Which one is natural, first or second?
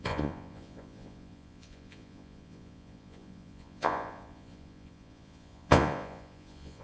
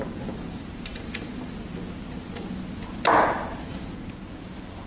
second